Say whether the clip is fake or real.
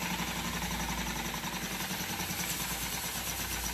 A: real